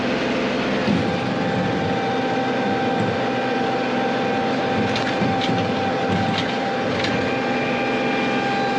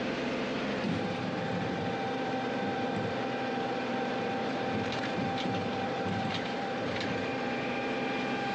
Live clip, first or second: first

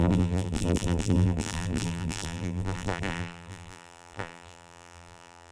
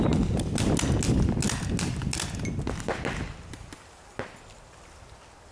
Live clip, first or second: second